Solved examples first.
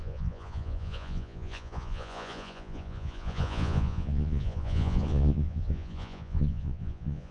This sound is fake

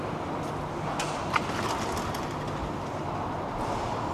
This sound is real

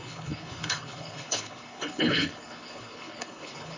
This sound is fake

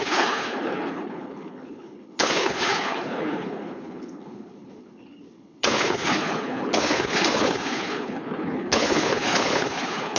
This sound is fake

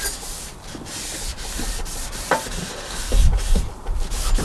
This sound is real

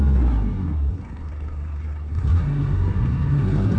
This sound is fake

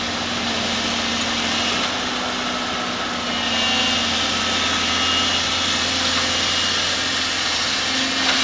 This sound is real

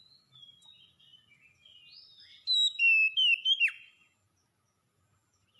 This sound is real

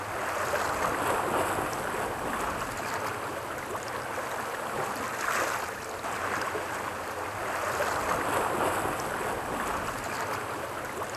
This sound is real